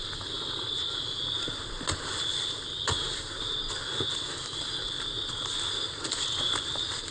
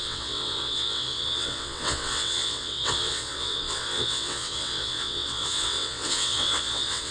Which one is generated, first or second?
second